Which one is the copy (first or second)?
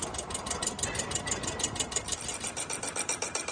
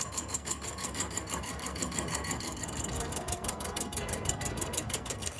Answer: second